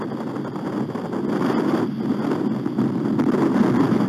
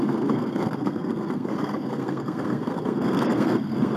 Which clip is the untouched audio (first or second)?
first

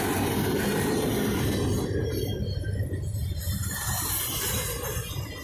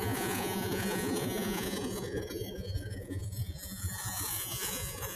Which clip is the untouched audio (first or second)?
first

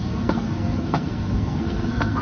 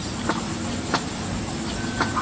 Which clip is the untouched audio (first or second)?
second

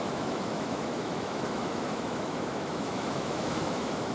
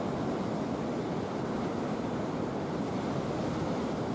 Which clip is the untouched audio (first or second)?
second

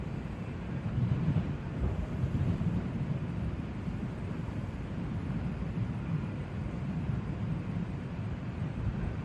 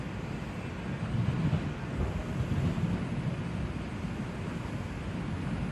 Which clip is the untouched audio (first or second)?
second